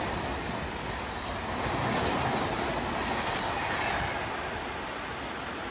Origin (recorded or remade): remade